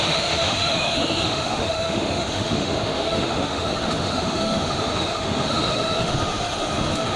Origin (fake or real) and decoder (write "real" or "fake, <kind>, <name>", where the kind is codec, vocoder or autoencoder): fake, autoencoder, DAC-VAE